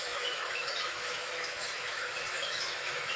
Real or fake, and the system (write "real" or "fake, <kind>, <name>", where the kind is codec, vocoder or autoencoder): fake, autoencoder, DAC-VAE